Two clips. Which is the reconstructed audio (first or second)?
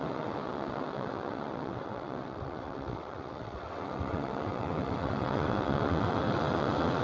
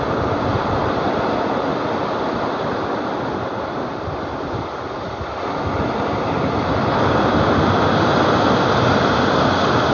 first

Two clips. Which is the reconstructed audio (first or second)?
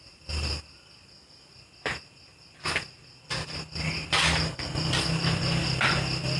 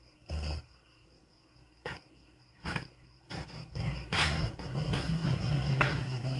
second